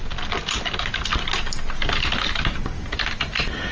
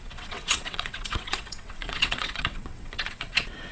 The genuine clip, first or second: first